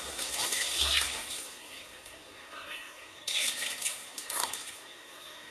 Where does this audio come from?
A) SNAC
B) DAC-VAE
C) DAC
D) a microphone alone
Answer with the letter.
A